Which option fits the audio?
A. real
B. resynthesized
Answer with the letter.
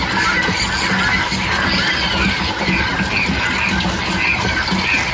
A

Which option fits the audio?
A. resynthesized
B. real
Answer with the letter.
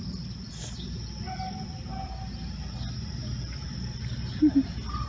B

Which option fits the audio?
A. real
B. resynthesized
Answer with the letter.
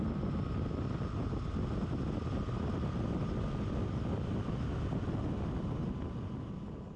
A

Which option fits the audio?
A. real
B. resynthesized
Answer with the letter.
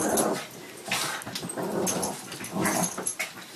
A